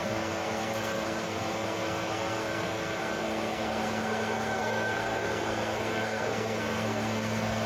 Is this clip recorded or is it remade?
remade